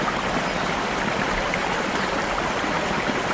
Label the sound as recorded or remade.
recorded